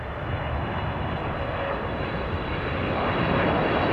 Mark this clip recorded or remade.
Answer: recorded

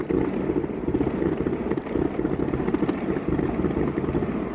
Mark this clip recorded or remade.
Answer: recorded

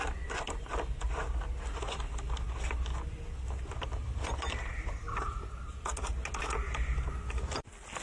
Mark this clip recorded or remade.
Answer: recorded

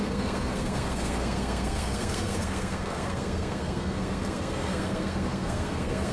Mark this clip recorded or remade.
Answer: remade